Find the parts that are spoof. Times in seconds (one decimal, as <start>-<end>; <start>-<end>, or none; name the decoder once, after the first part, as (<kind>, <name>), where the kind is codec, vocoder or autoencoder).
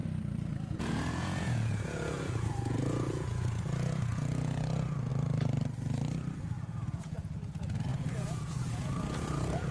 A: 0.6-5.1 (vocoder, Vocos); 6.4-9.7